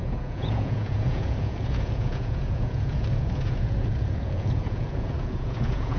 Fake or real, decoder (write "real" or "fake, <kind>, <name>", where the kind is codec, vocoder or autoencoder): fake, vocoder, Vocos